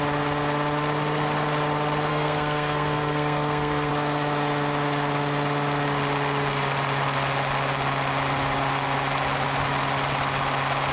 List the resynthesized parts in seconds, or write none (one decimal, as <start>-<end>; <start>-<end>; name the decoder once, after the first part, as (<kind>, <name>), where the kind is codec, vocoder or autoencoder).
2.1-3.9 (codec, SNAC)